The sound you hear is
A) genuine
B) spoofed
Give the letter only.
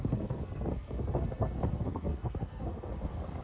B